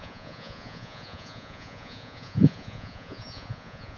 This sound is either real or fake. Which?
fake